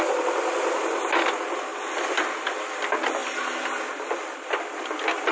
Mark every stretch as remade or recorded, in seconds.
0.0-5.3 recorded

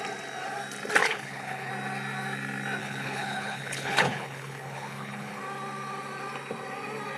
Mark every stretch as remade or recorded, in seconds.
0.0-1.0 recorded; 1.0-1.7 remade; 1.7-2.8 recorded; 2.8-5.4 remade; 5.4-7.2 recorded

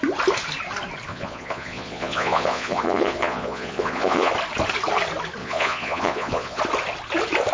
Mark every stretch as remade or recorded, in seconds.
0.0-1.1 recorded; 1.1-4.3 remade; 4.3-5.4 recorded; 5.4-6.6 remade; 6.6-7.5 recorded

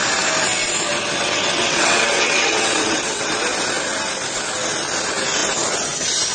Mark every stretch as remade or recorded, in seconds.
0.0-1.2 recorded; 1.2-3.3 remade; 3.3-6.3 recorded

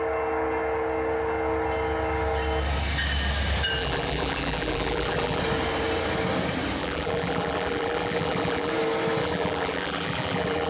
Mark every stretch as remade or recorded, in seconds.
0.0-3.8 recorded; 3.8-5.4 remade; 5.4-6.8 recorded; 6.8-8.7 remade; 8.7-9.2 recorded; 9.2-10.7 remade

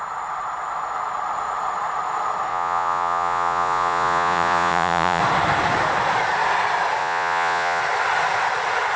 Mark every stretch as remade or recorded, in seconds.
0.0-2.5 recorded; 2.5-5.2 remade; 5.2-7.0 recorded; 7.0-7.8 remade; 7.8-9.0 recorded